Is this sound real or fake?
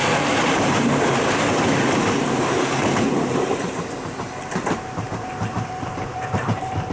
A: fake